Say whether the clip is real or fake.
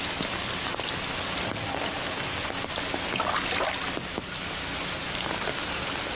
real